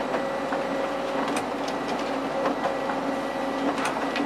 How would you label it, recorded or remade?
recorded